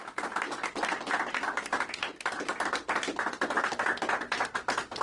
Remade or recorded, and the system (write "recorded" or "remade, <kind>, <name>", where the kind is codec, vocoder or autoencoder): recorded